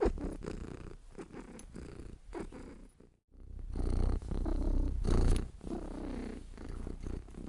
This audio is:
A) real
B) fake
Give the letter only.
A